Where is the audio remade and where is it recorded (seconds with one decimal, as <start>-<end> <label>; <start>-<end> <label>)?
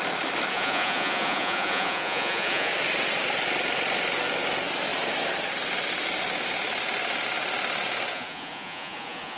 0.0-0.5 recorded; 0.5-2.7 remade; 2.7-8.1 recorded; 8.1-9.4 remade